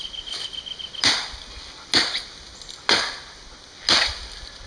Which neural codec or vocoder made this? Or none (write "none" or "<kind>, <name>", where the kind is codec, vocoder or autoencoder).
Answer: none